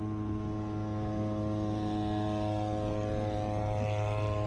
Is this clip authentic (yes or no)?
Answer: yes